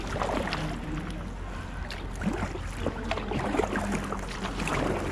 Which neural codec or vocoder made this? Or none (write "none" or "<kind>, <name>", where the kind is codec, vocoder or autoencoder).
none